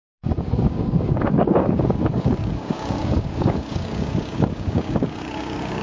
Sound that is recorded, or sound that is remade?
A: remade